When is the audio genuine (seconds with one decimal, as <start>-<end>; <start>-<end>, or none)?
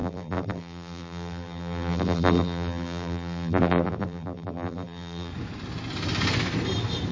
5.3-7.1